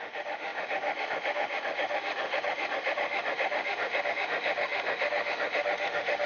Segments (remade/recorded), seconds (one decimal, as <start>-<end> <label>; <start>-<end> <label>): 0.0-6.3 remade

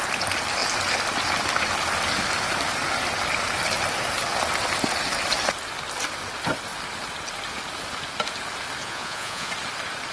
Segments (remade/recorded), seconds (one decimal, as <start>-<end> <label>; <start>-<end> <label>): 0.0-8.8 recorded; 8.8-9.5 remade; 9.5-10.1 recorded

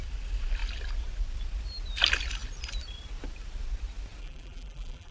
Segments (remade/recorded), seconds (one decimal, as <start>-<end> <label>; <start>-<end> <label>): 0.0-4.2 recorded; 4.2-5.1 remade

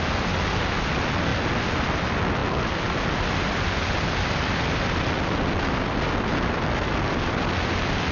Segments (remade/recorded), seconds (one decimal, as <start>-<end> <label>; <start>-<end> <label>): 0.0-8.1 recorded

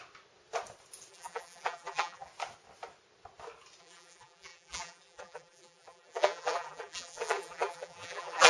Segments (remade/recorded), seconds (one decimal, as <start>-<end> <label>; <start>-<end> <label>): 0.0-1.1 recorded; 1.1-2.3 remade; 2.3-3.8 recorded; 3.8-8.5 remade